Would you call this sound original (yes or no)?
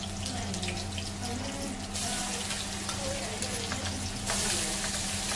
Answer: yes